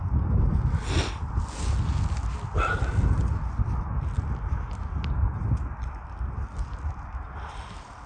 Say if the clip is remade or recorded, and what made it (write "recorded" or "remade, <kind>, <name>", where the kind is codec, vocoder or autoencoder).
recorded